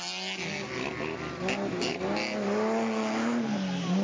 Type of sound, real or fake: real